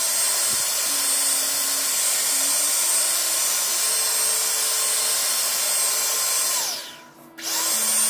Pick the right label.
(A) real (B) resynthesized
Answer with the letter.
A